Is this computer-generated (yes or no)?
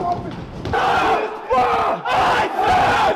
no